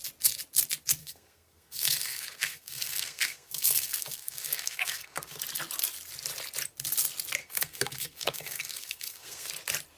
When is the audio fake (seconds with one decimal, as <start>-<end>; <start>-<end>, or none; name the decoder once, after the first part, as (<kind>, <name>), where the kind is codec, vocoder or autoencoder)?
1.0-5.4 (codec, SNAC); 7.4-9.5